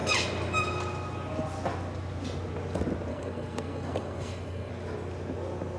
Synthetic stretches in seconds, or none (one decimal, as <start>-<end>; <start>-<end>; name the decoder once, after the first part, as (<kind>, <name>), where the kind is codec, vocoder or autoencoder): 3.1-4.7 (codec, SNAC)